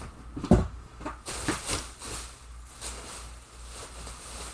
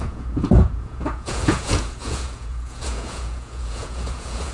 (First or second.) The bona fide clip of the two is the first